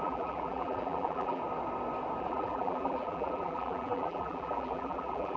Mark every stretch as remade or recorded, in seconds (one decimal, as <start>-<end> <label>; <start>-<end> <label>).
0.0-1.4 remade; 1.4-2.2 recorded; 2.2-5.4 remade